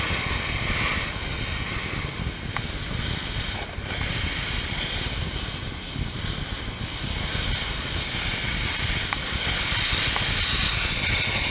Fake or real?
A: real